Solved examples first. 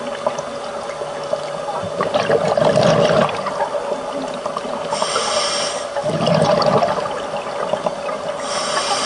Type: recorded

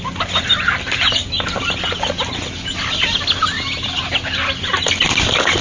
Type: recorded